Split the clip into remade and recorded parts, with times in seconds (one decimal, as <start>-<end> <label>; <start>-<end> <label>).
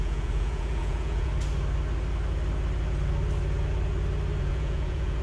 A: 0.0-1.3 remade; 1.3-4.4 recorded; 4.4-5.2 remade